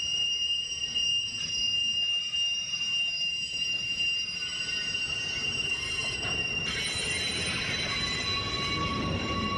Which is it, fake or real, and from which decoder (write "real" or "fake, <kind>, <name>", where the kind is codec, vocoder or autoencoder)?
fake, vocoder, BigVGAN v2